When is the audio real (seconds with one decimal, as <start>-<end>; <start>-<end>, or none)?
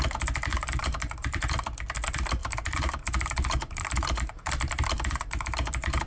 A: 0.0-0.5; 1.4-2.4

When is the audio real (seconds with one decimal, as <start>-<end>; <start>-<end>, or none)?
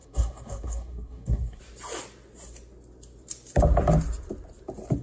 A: 1.6-5.0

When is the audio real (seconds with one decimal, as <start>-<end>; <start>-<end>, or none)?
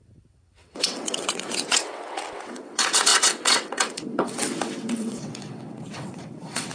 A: none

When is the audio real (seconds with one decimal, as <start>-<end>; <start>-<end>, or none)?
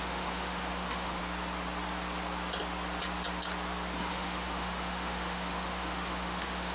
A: 1.2-4.1